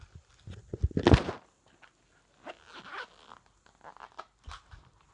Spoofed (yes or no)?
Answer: no